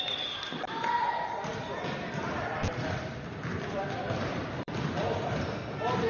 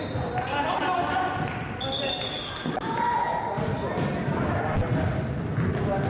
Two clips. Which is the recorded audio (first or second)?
second